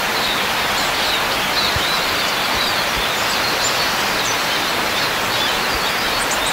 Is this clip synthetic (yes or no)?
no